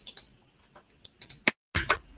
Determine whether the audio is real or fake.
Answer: real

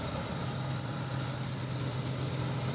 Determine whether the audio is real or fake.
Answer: fake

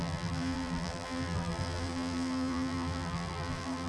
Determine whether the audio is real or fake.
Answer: fake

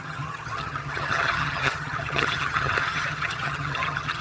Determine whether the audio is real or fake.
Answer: fake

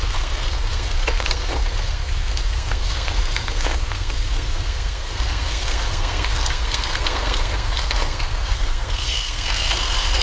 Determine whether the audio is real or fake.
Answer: fake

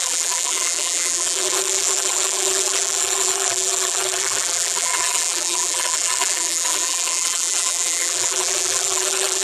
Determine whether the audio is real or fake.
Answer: fake